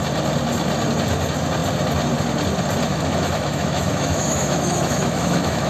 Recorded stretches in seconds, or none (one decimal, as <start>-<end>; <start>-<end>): 0.0-2.9

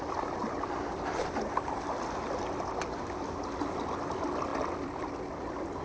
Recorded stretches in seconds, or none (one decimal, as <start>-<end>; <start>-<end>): 0.0-5.8